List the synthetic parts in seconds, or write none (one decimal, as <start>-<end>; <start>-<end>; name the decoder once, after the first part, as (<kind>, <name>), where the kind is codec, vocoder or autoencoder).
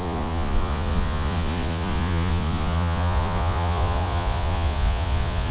0.0-5.5 (vocoder, Vocos)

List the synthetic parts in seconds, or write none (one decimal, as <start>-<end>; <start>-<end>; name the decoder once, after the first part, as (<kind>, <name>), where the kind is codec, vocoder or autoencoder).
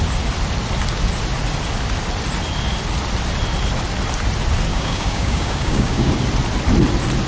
4.7-6.1 (codec, DAC)